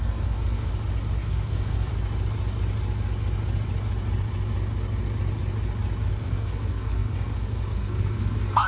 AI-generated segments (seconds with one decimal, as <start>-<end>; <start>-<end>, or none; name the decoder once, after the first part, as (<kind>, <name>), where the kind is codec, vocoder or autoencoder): 0.0-0.7 (codec, SNAC); 1.2-1.9; 6.1-8.7